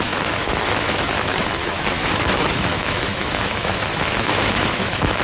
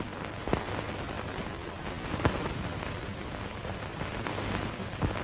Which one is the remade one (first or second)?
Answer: first